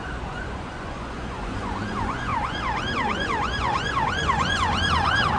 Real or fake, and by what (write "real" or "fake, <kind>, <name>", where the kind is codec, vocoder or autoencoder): fake, vocoder, Vocos